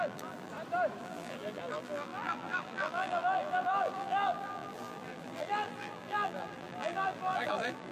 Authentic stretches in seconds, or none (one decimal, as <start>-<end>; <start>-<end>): 0.5-1.0